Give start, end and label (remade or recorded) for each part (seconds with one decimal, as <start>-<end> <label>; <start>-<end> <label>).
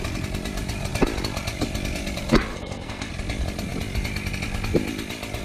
0.0-2.5 recorded; 2.5-3.1 remade; 3.1-5.4 recorded